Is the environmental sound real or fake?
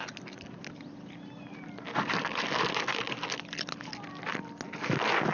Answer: real